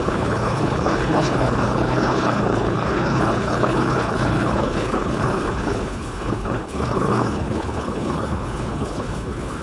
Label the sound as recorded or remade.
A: remade